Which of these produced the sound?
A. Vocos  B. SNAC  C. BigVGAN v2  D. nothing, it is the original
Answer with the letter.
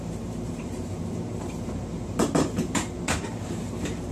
C